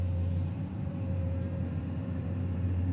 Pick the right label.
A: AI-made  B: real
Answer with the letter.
A